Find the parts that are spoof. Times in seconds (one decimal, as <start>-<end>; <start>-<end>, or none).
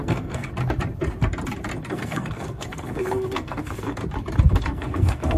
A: 0.0-0.5; 1.9-4.0; 4.6-5.4